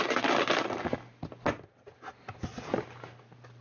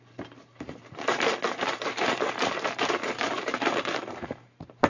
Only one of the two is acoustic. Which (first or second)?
first